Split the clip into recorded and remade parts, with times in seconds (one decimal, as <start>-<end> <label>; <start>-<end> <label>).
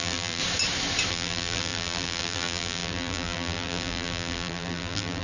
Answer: 0.0-0.4 remade; 0.4-1.1 recorded; 1.1-5.2 remade